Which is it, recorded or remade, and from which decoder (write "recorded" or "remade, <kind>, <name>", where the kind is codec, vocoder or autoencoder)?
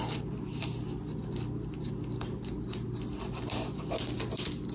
recorded